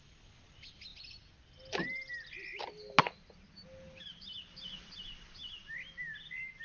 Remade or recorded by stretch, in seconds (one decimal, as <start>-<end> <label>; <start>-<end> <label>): 0.0-6.6 recorded